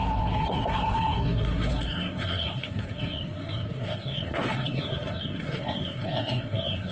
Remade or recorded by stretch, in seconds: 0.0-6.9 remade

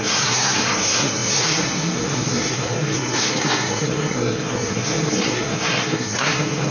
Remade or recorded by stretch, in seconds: 0.0-6.7 remade

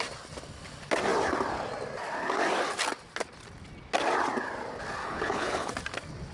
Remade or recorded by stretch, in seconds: 0.0-5.0 recorded; 5.0-5.7 remade; 5.7-6.3 recorded